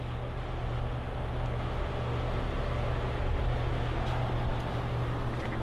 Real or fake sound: real